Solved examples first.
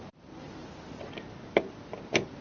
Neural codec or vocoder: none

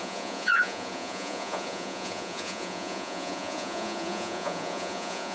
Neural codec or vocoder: vocoder, Vocos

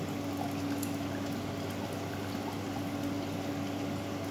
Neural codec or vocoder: none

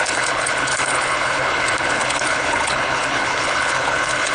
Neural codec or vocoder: codec, HILCodec